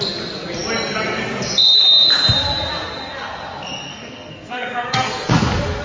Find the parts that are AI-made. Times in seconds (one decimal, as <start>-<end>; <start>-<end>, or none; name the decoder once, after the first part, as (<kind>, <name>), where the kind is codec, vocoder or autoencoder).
3.9-5.3 (codec, SNAC)